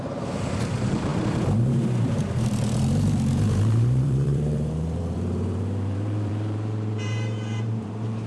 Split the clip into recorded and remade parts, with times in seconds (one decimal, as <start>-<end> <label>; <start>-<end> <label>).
0.0-8.3 remade